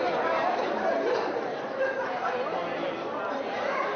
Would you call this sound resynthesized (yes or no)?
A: no